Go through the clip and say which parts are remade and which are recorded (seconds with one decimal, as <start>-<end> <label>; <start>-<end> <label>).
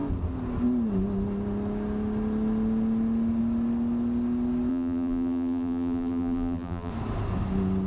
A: 0.0-4.7 recorded; 4.7-6.9 remade; 6.9-7.9 recorded